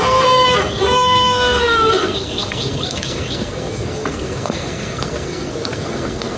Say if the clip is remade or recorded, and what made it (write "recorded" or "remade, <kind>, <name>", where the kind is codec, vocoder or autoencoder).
remade, codec, SNAC